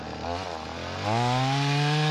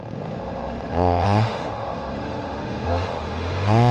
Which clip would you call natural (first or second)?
first